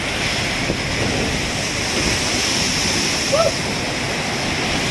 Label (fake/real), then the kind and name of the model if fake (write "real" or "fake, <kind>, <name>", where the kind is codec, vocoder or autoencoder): real